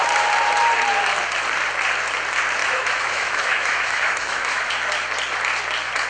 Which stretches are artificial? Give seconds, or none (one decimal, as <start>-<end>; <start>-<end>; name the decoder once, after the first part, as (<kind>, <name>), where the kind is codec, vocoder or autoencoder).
2.6-4.7 (autoencoder, DAC-VAE)